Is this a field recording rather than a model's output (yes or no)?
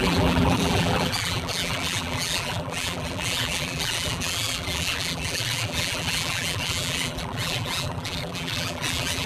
no